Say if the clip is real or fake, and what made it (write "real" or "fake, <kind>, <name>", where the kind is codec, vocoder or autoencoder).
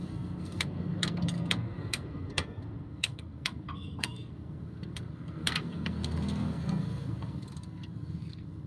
fake, codec, SNAC